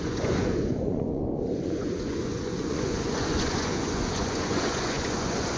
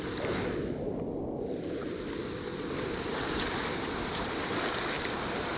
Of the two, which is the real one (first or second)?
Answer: second